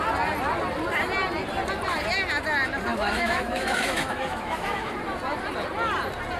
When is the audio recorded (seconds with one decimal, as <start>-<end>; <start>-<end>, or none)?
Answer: 0.0-2.9; 4.9-6.4